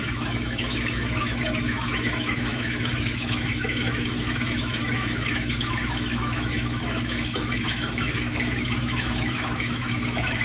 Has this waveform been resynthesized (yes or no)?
yes